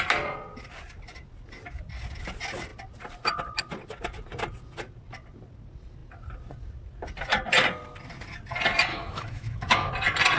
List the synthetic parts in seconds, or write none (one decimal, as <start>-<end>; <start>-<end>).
8.9-9.9